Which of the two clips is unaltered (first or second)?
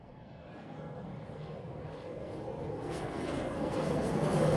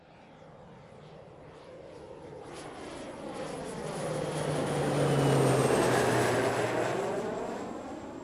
second